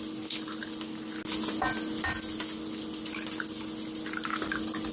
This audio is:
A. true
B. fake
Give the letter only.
A